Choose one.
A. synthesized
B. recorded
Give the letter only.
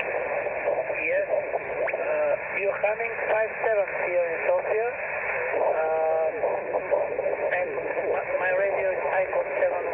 B